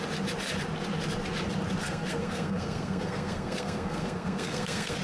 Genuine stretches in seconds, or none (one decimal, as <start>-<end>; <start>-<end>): 0.0-1.8